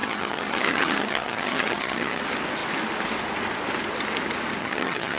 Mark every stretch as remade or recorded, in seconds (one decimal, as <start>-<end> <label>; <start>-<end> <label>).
0.0-2.2 remade; 2.2-4.6 recorded; 4.6-5.2 remade